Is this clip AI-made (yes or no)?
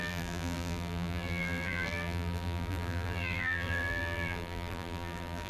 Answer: yes